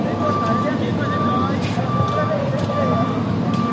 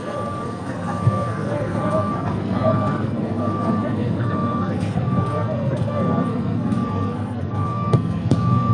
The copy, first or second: second